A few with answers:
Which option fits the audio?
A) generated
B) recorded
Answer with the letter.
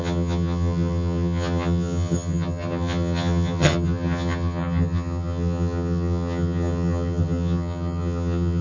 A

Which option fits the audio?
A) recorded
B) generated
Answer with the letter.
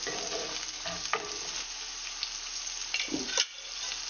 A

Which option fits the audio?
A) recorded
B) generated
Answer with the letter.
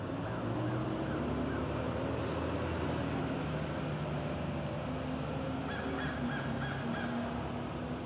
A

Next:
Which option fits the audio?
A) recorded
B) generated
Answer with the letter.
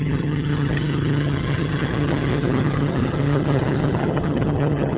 B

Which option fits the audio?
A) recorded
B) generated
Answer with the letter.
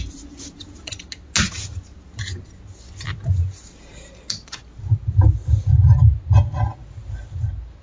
A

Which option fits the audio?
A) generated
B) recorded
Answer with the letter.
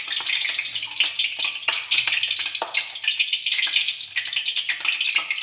B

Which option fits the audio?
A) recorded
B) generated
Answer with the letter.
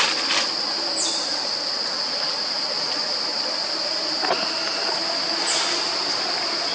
A